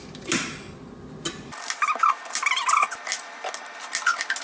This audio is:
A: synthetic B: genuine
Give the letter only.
B